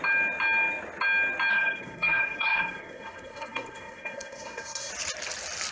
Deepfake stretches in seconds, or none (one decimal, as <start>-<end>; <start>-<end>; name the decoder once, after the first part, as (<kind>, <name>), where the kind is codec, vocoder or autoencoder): 1.5-4.9 (codec, SNAC)